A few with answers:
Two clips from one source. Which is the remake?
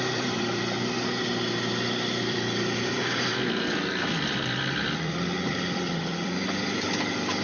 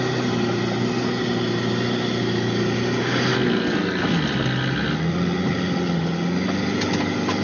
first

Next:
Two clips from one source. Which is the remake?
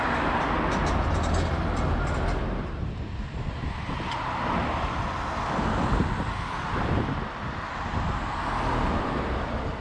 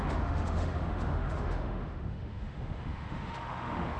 second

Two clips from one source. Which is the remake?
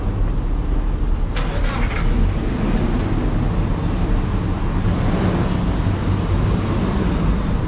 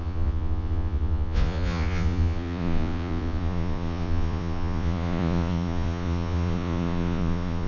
second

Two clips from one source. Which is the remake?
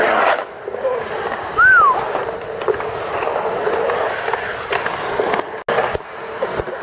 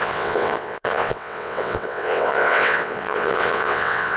second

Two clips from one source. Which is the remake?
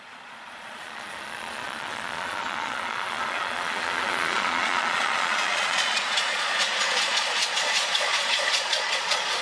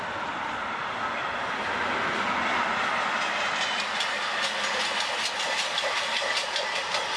first